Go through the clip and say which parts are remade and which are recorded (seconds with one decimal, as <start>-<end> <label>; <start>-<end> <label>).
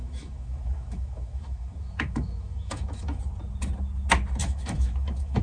0.0-3.2 remade; 3.2-4.4 recorded; 4.4-5.4 remade